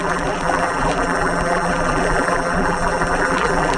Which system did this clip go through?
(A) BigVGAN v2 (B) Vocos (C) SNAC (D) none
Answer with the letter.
A